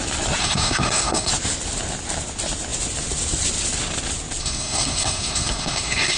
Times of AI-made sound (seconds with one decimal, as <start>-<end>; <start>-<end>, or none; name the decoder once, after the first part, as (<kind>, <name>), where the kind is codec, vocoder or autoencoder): 0.4-1.3 (codec, SNAC); 4.4-6.2